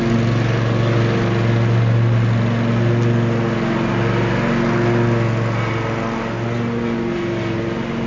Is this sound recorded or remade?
recorded